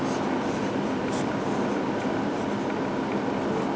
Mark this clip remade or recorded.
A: recorded